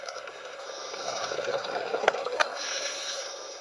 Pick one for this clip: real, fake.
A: fake